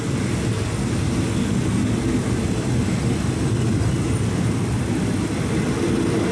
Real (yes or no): yes